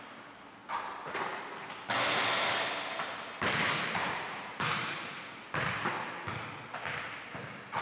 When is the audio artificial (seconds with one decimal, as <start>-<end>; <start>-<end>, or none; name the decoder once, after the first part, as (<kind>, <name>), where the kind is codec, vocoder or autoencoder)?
4.0-5.2 (vocoder, Vocos)